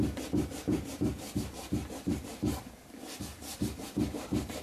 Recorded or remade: remade